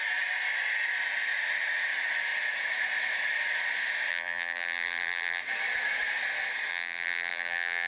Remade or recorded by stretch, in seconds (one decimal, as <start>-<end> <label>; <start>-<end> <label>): 0.0-4.1 recorded; 4.1-5.4 remade; 5.4-6.7 recorded; 6.7-7.9 remade